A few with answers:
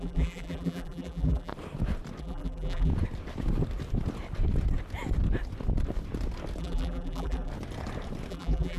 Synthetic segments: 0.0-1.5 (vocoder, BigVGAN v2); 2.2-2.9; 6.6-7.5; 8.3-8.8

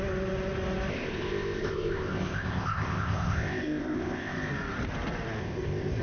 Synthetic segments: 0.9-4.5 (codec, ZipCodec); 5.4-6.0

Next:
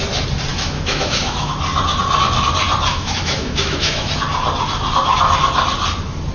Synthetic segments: 0.5-1.5 (autoencoder, DAC-VAE); 2.9-4.1